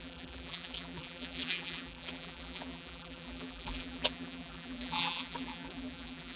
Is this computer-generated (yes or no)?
yes